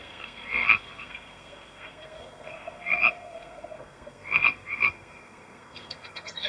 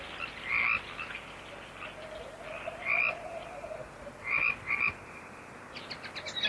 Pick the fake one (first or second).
first